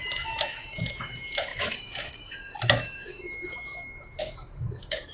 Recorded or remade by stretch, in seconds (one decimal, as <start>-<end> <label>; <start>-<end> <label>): 0.0-5.1 remade